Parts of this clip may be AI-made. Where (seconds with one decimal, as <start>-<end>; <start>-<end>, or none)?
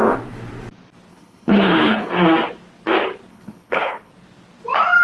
1.1-2.1; 3.3-4.1